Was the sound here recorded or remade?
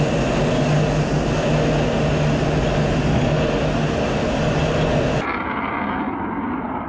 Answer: recorded